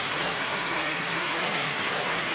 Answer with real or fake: fake